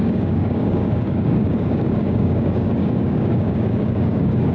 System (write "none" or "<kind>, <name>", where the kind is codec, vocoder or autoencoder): codec, DAC